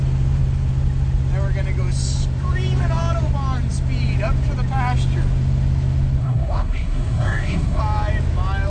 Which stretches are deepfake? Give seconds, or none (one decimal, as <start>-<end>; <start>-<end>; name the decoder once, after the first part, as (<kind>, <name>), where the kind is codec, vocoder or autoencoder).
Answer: 6.2-7.8 (codec, SNAC)